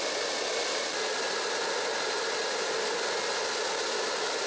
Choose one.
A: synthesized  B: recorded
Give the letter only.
B